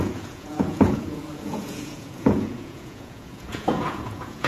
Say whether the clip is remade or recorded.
remade